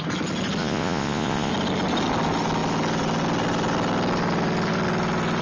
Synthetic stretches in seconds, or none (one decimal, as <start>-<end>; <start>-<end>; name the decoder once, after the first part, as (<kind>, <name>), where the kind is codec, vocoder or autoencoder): 0.6-1.5 (vocoder, Vocos)